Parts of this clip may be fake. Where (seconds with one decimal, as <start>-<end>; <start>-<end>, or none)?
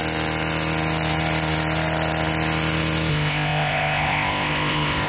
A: 3.1-5.1